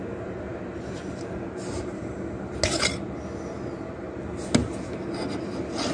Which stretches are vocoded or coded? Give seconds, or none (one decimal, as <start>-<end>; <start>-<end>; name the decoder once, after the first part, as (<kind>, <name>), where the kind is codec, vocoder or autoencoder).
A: none